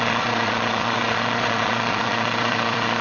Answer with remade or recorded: remade